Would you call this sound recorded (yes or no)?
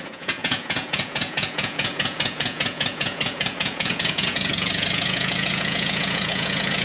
no